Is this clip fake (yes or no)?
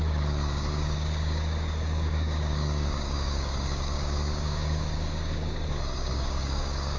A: yes